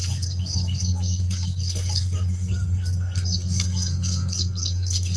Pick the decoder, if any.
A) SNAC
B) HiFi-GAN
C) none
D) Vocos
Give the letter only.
A